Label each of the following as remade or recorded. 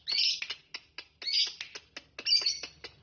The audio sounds recorded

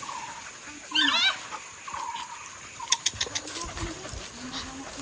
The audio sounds recorded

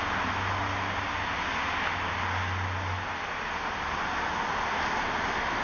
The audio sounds recorded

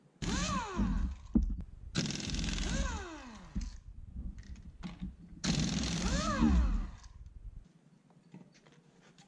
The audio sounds recorded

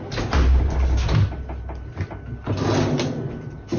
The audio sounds recorded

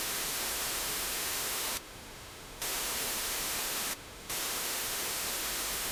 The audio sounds remade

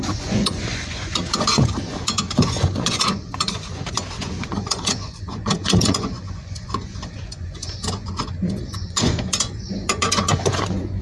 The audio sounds remade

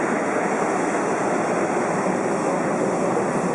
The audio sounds recorded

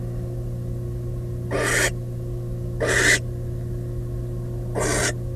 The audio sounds recorded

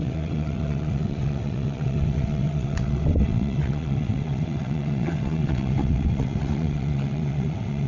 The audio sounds remade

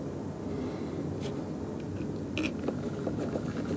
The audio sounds recorded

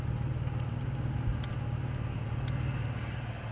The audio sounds recorded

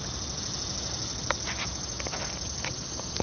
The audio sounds recorded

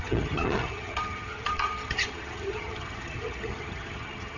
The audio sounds remade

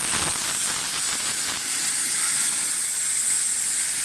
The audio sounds recorded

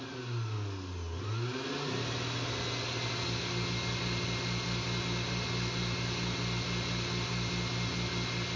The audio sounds recorded